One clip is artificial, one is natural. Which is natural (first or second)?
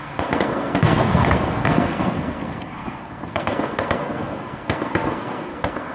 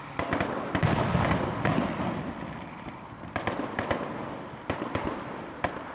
second